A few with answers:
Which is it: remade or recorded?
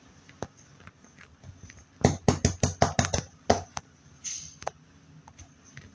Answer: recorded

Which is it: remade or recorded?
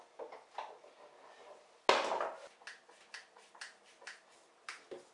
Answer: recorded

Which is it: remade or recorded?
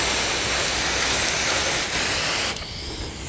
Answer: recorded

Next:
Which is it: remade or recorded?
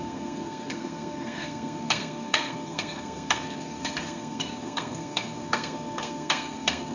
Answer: remade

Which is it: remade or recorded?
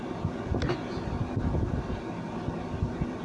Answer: recorded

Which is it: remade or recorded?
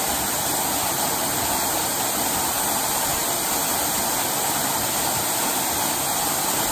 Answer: recorded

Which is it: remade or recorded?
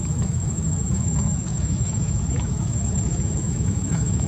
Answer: remade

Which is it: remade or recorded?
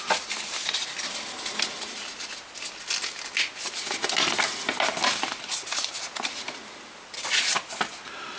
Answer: recorded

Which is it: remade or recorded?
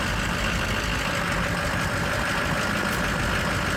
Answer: recorded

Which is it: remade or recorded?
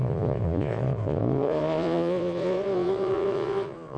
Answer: remade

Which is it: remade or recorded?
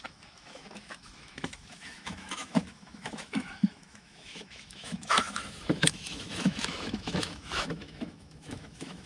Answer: remade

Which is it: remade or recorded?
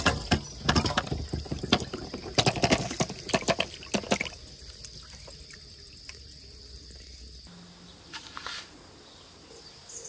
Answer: recorded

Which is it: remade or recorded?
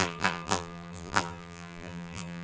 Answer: remade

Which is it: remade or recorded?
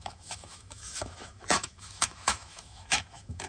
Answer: remade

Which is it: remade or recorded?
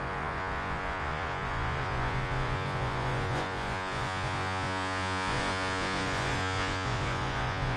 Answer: remade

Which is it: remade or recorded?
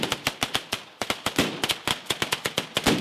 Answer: recorded